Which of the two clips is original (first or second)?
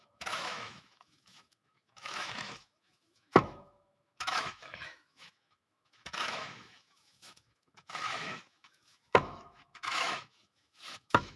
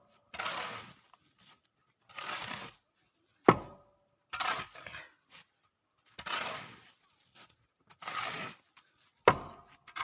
second